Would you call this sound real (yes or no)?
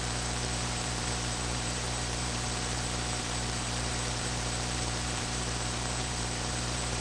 no